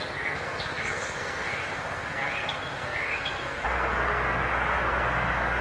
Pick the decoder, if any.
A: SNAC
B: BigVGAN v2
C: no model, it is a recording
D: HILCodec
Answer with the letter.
A